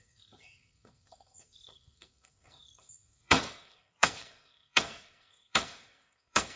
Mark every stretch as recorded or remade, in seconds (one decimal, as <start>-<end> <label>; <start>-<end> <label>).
0.0-6.6 remade